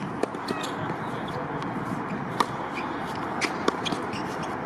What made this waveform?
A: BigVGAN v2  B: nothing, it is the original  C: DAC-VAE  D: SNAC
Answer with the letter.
B